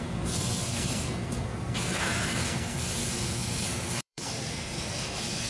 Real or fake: fake